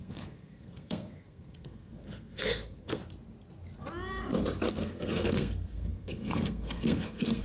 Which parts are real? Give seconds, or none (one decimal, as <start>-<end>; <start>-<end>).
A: 3.0-4.7